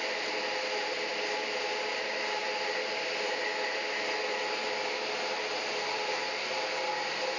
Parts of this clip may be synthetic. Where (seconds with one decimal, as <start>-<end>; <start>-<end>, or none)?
none

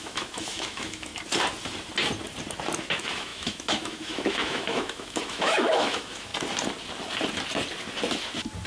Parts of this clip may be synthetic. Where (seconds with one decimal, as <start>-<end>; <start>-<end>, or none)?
0.0-1.1; 2.8-6.3

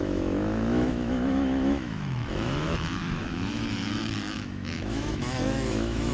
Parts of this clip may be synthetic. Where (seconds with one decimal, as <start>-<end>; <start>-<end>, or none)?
0.0-6.1

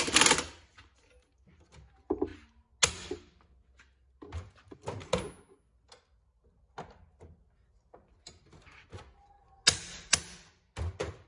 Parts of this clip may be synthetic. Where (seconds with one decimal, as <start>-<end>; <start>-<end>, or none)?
none

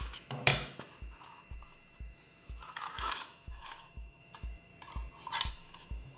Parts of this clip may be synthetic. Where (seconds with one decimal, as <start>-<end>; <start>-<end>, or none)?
0.0-4.7; 5.5-6.2

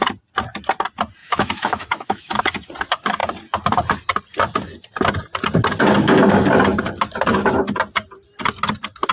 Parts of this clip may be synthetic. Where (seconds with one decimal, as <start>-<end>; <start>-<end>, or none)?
1.2-2.4

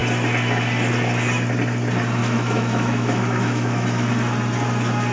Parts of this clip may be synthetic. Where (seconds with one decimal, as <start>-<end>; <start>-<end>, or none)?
2.2-4.1